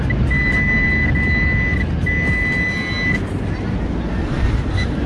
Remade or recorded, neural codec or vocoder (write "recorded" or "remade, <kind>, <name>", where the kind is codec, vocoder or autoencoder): recorded